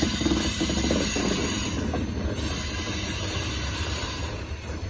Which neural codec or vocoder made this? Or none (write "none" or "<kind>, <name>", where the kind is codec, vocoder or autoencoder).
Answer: none